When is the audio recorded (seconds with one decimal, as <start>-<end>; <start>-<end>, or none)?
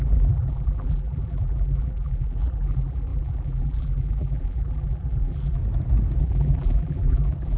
5.6-6.2